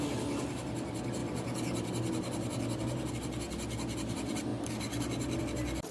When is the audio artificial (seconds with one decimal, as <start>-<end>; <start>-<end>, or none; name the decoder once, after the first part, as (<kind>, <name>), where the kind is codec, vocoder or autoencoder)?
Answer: none